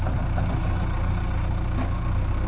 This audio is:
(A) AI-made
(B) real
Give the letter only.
B